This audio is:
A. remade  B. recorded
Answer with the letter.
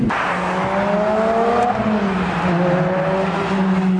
B